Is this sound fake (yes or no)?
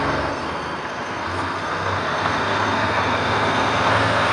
yes